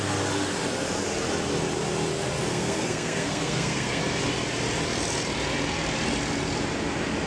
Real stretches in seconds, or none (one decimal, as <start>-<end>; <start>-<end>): 0.0-2.5; 4.0-7.3